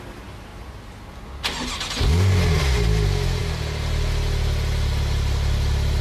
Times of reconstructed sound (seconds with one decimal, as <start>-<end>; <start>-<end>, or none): none

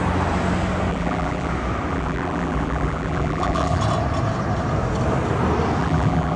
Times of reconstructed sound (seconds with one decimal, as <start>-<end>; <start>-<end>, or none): 0.9-1.5; 1.9-3.8; 5.8-6.4